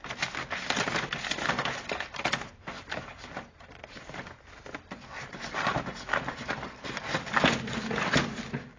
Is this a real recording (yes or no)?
yes